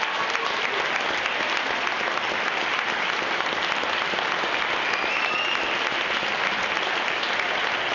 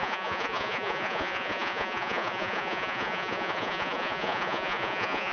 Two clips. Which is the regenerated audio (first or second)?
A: second